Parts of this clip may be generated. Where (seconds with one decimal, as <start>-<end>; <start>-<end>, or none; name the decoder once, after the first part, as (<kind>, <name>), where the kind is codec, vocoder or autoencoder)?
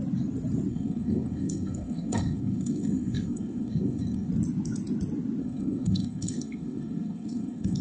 0.7-4.3 (codec, SNAC); 5.4-7.8